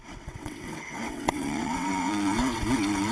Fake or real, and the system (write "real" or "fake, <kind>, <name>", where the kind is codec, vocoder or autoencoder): fake, vocoder, WaveNeXt